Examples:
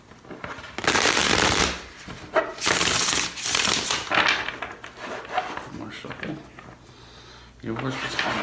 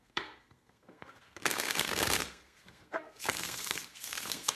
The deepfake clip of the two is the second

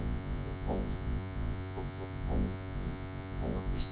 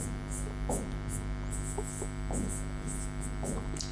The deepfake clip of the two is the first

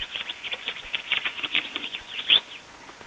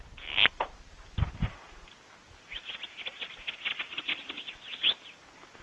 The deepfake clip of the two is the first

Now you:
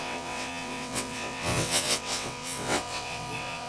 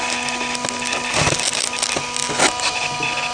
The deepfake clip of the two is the first